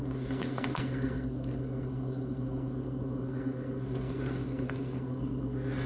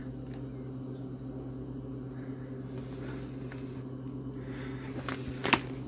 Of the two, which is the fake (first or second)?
first